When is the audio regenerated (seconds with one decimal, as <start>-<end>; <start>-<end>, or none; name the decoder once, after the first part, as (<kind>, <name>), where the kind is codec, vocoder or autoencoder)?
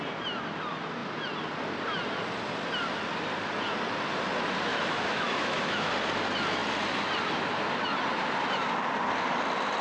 4.7-5.9 (autoencoder, DAC-VAE)